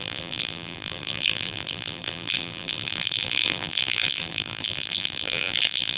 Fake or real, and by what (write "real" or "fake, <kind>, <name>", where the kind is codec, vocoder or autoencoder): fake, vocoder, BigVGAN v2